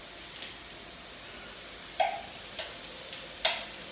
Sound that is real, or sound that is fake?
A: real